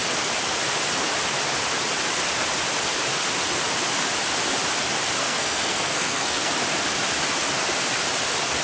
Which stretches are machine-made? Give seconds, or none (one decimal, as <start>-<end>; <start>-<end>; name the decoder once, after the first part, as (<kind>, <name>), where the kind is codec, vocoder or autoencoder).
5.2-6.5 (codec, SNAC)